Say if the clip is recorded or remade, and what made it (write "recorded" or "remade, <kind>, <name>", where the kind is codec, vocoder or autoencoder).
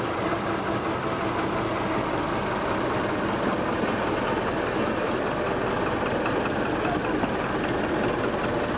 recorded